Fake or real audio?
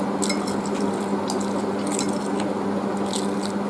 real